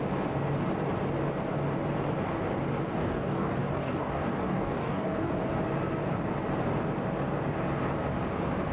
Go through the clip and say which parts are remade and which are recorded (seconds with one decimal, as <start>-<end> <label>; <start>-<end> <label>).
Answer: 0.0-3.0 recorded; 3.0-5.3 remade; 5.3-8.7 recorded